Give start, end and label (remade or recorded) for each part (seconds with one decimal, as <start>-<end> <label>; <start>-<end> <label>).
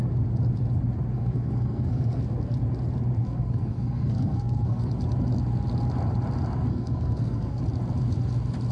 0.0-1.1 recorded; 1.1-2.2 remade; 2.2-3.2 recorded; 3.2-4.9 remade; 4.9-6.7 recorded; 6.7-7.6 remade; 7.6-8.7 recorded